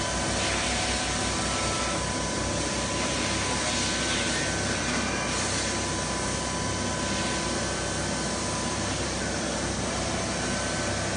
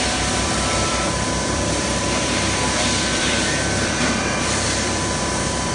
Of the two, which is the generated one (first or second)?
second